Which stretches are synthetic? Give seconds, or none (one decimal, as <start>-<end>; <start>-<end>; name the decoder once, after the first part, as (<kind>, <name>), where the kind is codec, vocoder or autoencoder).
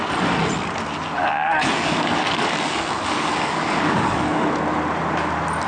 1.2-4.6 (codec, DAC)